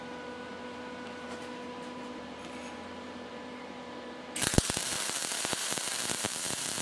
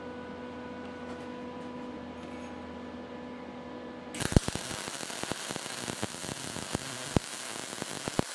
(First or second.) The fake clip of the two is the first